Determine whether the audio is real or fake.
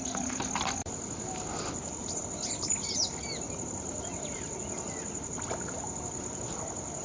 real